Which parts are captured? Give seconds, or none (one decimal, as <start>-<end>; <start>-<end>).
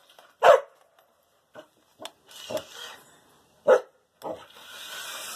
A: 0.0-5.4